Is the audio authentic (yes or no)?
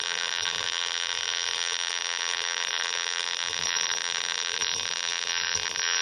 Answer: no